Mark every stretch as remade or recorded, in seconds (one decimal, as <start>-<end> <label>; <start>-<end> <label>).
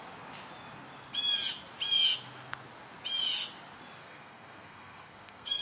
0.0-4.0 recorded; 4.0-5.6 remade